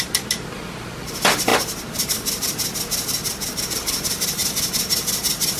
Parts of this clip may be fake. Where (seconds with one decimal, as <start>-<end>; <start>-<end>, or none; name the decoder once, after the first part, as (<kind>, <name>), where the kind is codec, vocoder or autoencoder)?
none

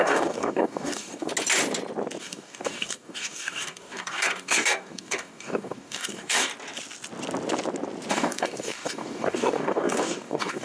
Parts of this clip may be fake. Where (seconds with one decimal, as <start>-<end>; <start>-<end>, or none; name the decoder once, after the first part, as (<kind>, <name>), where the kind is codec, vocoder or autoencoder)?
0.0-1.3 (codec, DAC); 2.2-6.5; 8.1-10.6

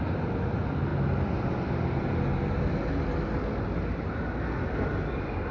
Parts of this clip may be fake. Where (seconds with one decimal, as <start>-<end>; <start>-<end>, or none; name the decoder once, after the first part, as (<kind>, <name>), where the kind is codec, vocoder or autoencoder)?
none

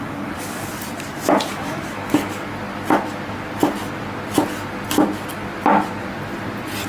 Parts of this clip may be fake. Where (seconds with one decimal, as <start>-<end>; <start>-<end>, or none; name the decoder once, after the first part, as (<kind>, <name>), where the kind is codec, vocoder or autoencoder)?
0.0-0.7 (codec, DAC); 1.5-2.5